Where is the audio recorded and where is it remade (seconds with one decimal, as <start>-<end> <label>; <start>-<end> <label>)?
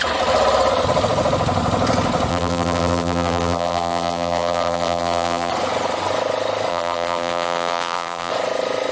0.0-2.3 recorded; 2.3-5.5 remade; 5.5-6.7 recorded; 6.7-8.3 remade; 8.3-8.9 recorded